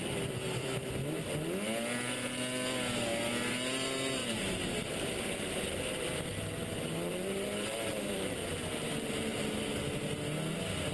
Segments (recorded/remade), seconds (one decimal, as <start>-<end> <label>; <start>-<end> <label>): 0.0-4.2 recorded; 4.2-5.8 remade; 5.8-7.1 recorded; 7.1-8.5 remade; 8.5-8.9 recorded; 8.9-9.8 remade; 9.8-10.9 recorded